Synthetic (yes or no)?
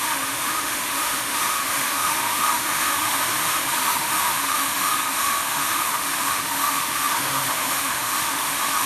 yes